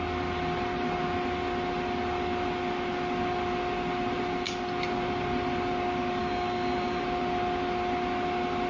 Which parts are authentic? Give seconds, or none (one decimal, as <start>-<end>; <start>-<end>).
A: 0.0-6.2; 7.0-8.7